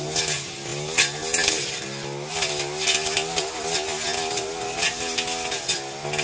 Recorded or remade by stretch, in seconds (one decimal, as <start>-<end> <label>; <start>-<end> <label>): 0.0-6.2 recorded